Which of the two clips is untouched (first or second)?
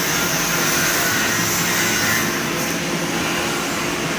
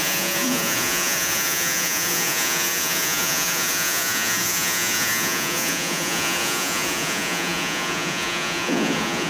first